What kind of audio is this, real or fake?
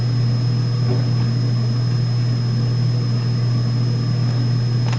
real